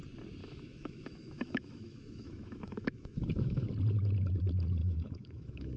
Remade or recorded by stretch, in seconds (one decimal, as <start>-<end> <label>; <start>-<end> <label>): 0.0-0.4 recorded; 0.4-3.7 remade; 3.7-4.8 recorded; 4.8-5.8 remade